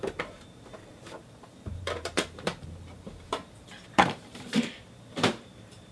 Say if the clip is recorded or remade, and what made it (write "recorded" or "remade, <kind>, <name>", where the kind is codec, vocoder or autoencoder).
remade, vocoder, BigVGAN v2